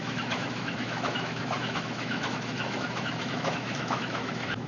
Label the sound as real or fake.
fake